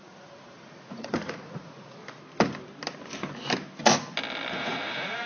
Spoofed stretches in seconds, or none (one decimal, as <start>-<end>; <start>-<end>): 0.0-2.0; 4.5-5.3